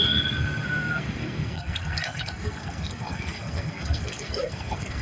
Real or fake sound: fake